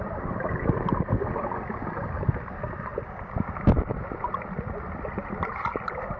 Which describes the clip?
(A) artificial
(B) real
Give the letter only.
B